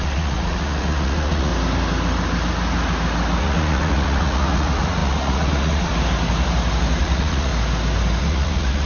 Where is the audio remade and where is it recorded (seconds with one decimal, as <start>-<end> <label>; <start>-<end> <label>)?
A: 0.0-1.5 remade; 1.5-3.4 recorded; 3.4-5.9 remade; 5.9-7.0 recorded; 7.0-7.5 remade; 7.5-8.2 recorded; 8.2-8.9 remade